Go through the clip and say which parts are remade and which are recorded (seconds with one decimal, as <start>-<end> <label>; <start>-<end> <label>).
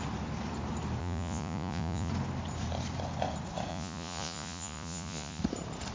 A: 0.0-1.0 recorded; 1.0-2.1 remade; 2.1-3.7 recorded; 3.7-5.4 remade; 5.4-5.9 recorded